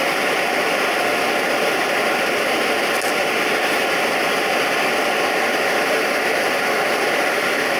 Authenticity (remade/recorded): recorded